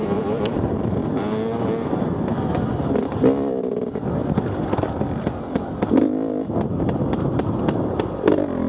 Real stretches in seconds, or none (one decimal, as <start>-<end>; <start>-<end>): 1.0-2.3; 4.2-4.8